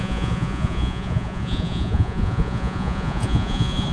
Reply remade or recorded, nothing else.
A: remade